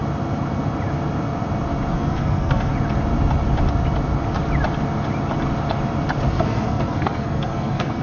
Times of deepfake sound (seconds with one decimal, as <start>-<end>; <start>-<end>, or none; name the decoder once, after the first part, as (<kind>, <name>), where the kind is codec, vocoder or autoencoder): 1.9-2.7 (codec, SNAC); 6.3-8.0